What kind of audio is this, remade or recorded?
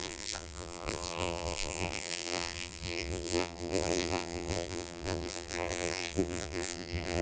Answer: remade